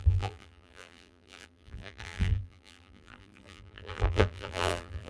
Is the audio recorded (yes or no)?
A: no